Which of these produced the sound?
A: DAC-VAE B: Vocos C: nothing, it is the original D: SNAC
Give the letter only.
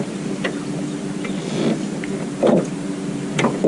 C